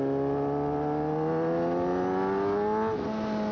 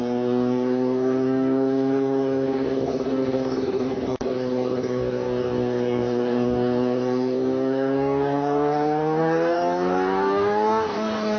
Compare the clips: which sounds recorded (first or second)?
first